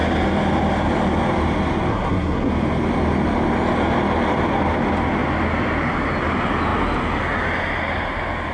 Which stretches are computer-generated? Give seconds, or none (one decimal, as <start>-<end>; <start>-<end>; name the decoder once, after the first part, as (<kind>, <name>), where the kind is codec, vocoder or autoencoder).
1.9-2.5 (codec, SNAC)